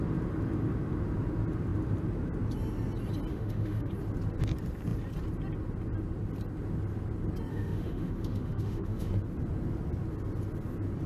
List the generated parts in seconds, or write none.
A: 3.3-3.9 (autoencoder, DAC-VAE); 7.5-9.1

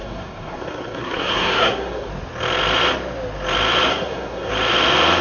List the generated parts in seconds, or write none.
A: 0.0-2.1 (codec, SNAC); 3.9-4.5

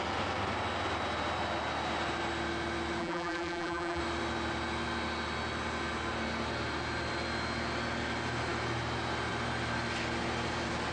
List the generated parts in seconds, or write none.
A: 3.0-4.0 (vocoder, BigVGAN v2)